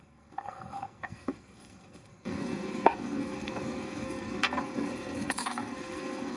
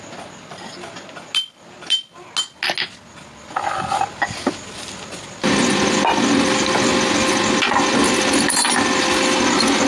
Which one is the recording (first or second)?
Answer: second